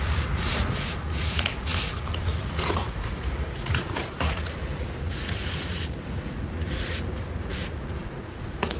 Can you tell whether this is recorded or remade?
remade